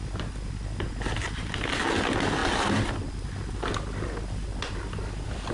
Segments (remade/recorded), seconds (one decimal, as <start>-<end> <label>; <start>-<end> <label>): 0.0-5.5 recorded